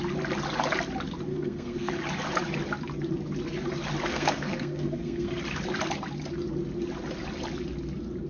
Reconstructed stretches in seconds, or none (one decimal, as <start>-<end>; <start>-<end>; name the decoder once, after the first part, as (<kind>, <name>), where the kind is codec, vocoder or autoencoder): 1.3-1.9 (codec, SNAC); 4.1-5.4